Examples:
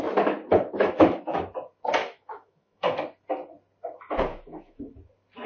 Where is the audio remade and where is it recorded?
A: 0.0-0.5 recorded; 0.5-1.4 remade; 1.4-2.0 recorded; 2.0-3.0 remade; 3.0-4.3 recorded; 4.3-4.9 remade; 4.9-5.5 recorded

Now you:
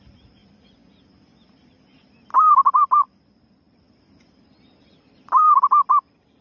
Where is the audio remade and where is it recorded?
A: 0.0-6.4 recorded

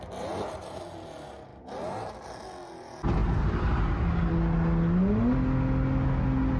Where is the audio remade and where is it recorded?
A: 0.0-6.6 recorded